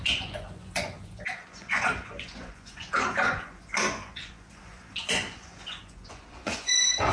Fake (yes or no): yes